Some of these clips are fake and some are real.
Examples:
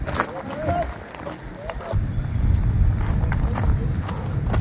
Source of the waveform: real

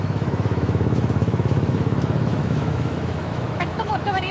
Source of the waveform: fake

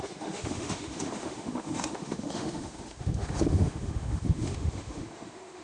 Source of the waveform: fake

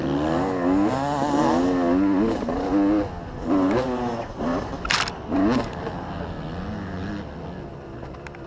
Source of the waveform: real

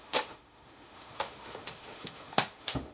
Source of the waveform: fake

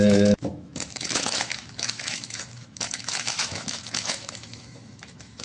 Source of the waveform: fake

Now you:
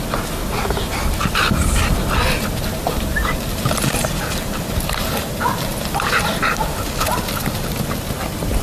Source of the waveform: real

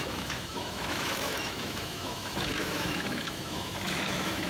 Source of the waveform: fake